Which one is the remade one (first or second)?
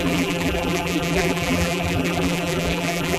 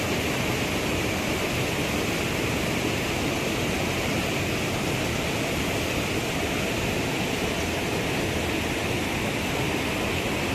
first